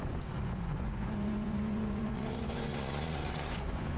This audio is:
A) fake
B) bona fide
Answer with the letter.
A